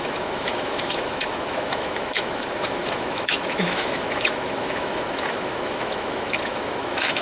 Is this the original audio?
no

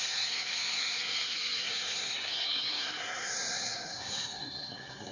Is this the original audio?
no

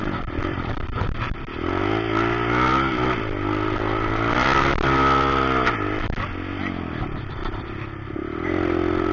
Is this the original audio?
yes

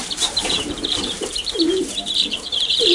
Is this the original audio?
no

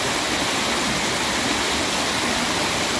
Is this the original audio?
yes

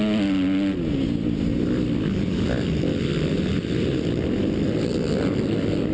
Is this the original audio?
yes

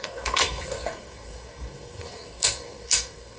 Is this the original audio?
no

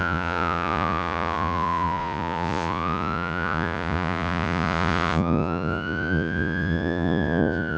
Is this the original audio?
no